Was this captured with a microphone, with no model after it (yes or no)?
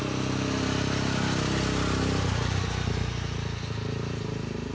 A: yes